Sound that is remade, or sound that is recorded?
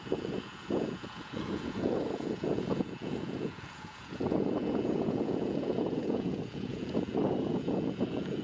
remade